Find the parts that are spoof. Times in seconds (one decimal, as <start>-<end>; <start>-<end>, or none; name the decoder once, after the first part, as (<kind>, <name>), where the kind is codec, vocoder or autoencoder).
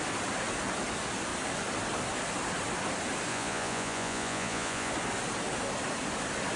3.3-4.9 (vocoder, Vocos)